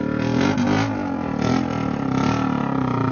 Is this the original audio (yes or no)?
yes